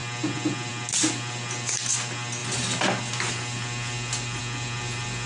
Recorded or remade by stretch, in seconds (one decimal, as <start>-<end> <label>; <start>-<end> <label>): 0.0-5.3 recorded

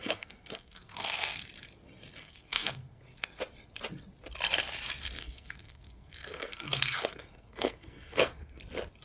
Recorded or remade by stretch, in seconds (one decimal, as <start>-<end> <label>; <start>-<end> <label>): 0.0-1.5 remade; 1.5-2.2 recorded; 2.2-3.4 remade; 3.4-5.2 recorded; 5.2-8.6 remade; 8.6-9.0 recorded

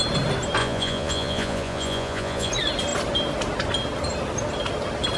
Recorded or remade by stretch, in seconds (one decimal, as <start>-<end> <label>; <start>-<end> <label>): 0.0-0.6 recorded; 0.6-2.5 remade; 2.5-5.2 recorded